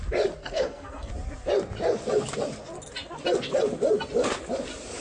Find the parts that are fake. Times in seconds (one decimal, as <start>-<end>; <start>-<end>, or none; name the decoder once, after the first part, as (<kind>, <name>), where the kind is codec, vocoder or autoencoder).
0.4-1.1 (codec, SNAC)